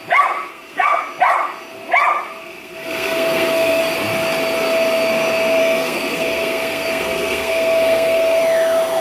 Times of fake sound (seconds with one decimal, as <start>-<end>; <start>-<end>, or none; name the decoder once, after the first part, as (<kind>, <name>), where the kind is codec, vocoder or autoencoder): 0.5-1.0 (codec, SNAC); 2.4-3.8; 5.6-8.4